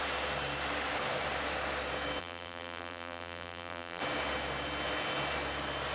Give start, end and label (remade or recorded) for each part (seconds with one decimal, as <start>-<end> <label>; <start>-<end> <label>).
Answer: 0.0-2.2 recorded; 2.2-4.0 remade; 4.0-5.9 recorded